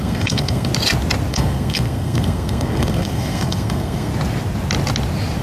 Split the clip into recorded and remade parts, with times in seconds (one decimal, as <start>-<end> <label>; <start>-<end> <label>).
0.0-0.7 remade; 0.7-1.3 recorded; 1.3-4.1 remade; 4.1-5.4 recorded